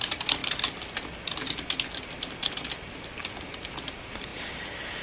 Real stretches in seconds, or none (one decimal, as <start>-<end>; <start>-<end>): 0.4-3.4